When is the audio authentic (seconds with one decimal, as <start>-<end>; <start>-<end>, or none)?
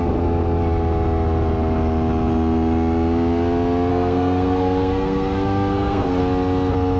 0.0-3.9; 6.2-7.0